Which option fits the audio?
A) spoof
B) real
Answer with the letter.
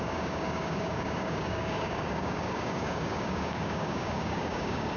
A